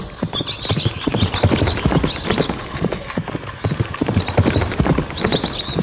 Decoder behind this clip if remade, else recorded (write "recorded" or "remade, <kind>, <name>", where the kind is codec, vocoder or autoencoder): recorded